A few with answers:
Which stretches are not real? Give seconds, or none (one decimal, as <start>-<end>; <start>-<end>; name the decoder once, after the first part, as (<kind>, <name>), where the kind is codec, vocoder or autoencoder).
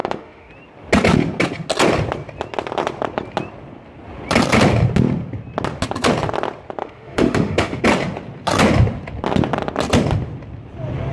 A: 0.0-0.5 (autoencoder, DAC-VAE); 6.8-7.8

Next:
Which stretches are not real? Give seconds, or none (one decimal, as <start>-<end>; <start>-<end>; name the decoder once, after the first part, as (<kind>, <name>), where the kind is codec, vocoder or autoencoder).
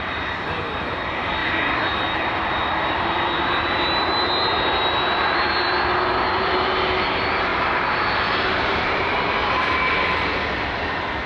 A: 7.5-9.3 (vocoder, BigVGAN v2)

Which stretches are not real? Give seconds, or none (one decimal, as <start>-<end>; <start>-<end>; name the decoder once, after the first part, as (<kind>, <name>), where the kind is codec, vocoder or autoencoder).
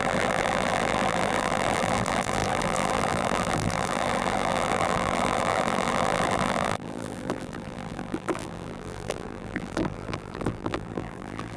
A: 0.0-11.6 (vocoder, BigVGAN v2)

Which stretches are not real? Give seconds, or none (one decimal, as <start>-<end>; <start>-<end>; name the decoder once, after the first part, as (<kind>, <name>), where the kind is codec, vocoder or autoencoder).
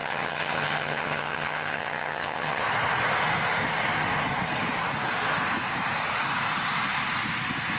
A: 0.0-2.6 (vocoder, HiFi-GAN)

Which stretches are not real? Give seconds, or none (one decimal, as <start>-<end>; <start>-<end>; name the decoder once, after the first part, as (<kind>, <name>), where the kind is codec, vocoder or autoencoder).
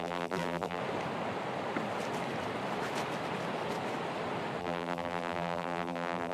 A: 0.0-0.8 (vocoder, BigVGAN v2); 4.6-6.3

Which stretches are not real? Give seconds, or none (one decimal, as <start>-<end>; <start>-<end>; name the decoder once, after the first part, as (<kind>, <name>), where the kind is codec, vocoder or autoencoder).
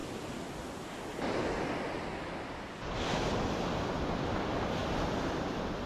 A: none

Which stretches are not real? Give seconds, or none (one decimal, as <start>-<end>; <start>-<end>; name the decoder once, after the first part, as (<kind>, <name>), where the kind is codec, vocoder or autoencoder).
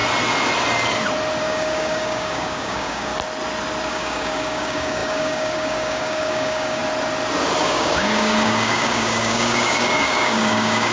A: 1.4-3.1 (codec, DAC); 3.9-6.8; 7.6-10.9